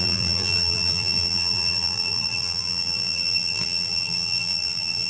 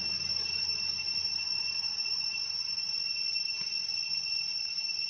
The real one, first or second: second